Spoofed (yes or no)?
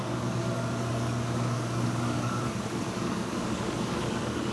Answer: yes